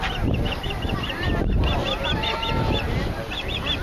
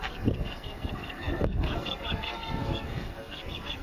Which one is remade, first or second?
second